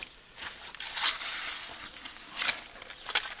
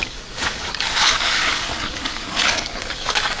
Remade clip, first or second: second